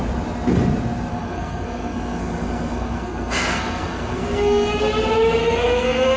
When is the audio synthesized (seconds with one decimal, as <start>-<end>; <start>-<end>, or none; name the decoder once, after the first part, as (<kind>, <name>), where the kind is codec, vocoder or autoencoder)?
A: 1.1-4.8 (codec, SNAC); 5.4-6.2